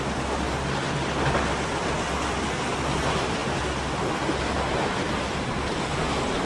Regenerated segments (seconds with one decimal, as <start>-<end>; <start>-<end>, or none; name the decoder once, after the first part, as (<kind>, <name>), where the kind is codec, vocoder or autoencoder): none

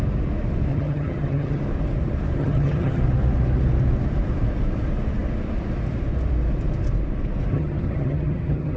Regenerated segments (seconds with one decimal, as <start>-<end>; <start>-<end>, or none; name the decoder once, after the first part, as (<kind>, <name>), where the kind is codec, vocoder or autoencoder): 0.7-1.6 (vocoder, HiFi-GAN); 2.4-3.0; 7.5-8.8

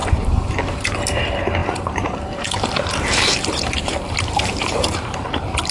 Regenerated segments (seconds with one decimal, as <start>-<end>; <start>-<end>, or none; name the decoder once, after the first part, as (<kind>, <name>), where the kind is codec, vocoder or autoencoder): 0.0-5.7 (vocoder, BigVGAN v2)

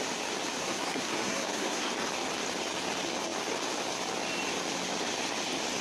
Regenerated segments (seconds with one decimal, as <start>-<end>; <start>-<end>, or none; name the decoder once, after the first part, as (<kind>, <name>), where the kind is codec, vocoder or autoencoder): 0.6-1.9 (codec, SNAC)

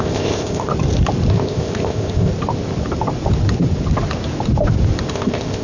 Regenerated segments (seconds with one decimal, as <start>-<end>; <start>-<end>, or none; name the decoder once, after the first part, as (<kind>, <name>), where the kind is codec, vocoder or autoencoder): 0.0-0.7 (codec, ZipCodec); 1.3-2.3; 5.1-5.6

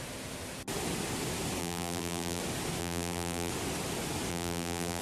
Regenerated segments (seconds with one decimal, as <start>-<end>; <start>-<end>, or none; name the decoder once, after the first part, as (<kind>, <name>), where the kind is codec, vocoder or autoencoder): 1.6-2.4 (vocoder, BigVGAN v2); 2.8-3.5; 4.3-5.0

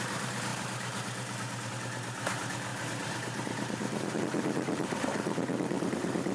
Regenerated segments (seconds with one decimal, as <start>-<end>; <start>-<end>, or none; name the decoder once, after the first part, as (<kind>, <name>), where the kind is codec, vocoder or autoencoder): 0.0-6.3 (vocoder, BigVGAN v2)